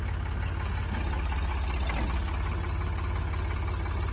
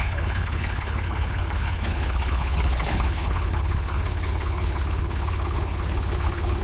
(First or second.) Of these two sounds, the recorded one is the first